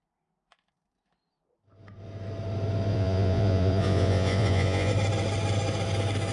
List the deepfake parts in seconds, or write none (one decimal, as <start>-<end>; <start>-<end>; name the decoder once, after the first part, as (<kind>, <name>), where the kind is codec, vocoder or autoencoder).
2.9-4.9 (vocoder, Vocos)